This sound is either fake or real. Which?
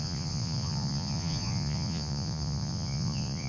fake